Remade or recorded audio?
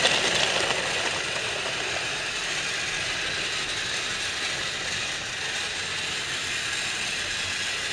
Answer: recorded